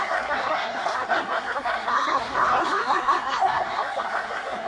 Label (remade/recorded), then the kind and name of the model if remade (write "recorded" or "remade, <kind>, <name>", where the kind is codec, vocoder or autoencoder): remade, codec, SNAC